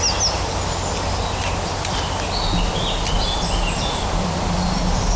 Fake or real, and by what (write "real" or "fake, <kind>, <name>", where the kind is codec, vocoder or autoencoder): real